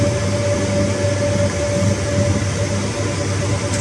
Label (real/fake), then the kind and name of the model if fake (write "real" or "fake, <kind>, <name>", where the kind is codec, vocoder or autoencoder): real